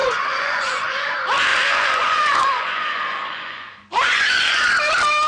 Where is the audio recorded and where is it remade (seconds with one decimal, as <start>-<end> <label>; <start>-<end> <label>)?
0.0-1.1 remade; 1.1-1.5 recorded; 1.5-4.7 remade; 4.7-5.3 recorded